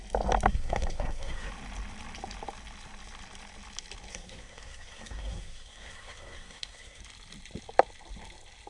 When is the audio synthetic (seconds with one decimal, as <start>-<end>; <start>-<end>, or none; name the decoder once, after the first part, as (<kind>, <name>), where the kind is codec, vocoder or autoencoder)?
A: 0.5-1.5 (codec, SNAC); 4.1-7.0